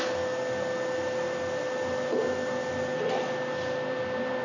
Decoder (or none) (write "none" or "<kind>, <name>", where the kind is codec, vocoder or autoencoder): none